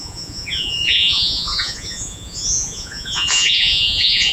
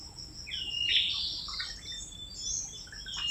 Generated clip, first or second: first